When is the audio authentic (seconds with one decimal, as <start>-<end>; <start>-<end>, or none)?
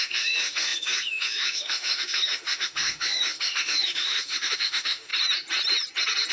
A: 5.1-6.3